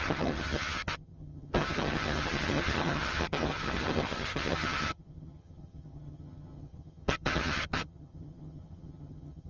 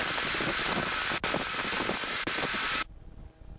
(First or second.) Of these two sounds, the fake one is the first